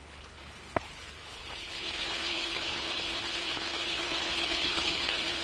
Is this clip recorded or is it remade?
remade